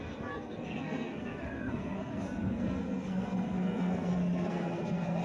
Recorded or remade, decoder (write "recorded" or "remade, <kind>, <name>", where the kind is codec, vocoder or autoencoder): remade, codec, SNAC